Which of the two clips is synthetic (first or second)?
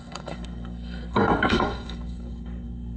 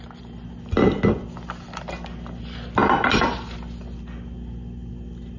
first